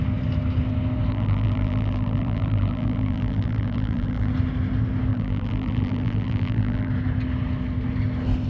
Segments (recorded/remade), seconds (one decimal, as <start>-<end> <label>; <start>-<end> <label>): 0.0-1.1 recorded; 1.1-4.3 remade; 4.3-5.1 recorded; 5.1-6.9 remade; 6.9-8.5 recorded